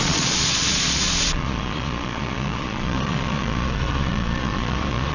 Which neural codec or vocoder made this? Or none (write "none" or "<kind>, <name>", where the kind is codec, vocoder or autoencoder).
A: vocoder, Vocos